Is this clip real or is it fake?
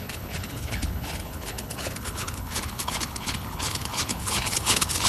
fake